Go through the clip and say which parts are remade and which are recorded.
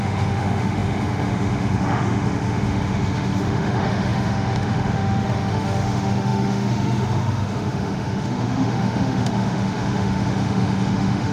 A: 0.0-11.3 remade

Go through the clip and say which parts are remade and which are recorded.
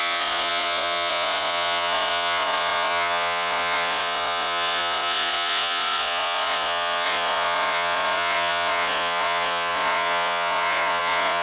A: 0.0-11.4 remade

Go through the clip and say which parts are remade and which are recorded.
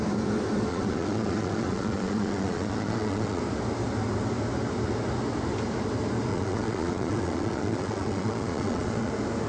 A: 0.0-0.7 recorded; 0.7-3.4 remade; 3.4-6.3 recorded; 6.3-9.1 remade; 9.1-9.5 recorded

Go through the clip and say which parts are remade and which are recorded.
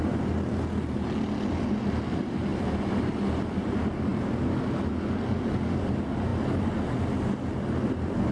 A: 0.0-8.3 recorded